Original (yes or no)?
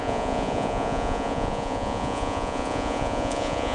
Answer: no